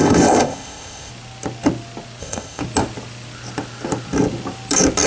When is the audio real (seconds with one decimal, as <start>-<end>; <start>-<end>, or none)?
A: 1.1-2.2; 2.6-5.1